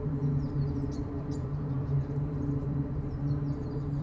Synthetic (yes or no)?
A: yes